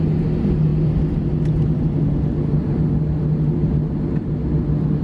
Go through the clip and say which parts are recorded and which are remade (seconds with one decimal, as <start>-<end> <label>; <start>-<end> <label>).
0.0-5.0 recorded